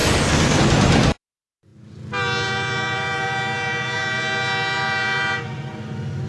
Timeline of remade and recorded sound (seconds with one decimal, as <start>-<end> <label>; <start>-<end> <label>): 0.0-6.3 recorded